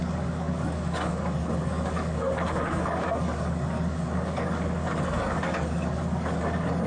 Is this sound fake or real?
fake